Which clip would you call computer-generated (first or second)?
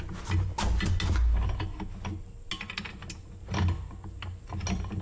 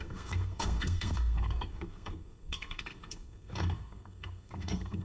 second